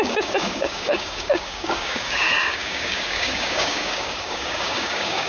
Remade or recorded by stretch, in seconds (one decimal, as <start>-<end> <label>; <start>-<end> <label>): 0.0-5.3 remade